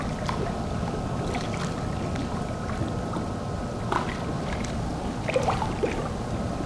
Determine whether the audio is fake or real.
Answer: fake